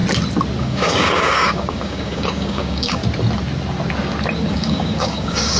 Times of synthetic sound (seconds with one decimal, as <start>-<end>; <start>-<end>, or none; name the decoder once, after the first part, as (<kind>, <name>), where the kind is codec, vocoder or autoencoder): 0.6-3.0 (codec, DAC); 4.5-5.6